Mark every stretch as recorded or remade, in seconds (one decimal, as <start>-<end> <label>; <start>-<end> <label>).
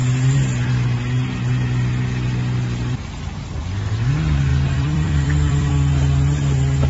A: 0.0-4.5 recorded; 4.5-5.7 remade; 5.7-6.9 recorded